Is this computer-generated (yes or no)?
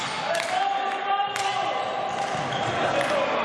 no